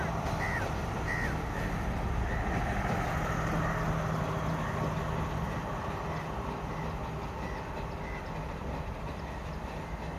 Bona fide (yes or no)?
yes